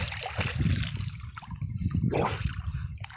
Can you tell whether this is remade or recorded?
recorded